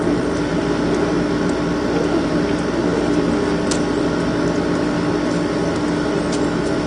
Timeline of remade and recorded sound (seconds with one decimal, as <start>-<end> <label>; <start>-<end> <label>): 0.0-6.9 recorded